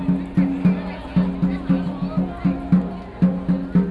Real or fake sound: real